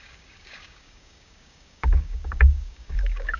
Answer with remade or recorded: remade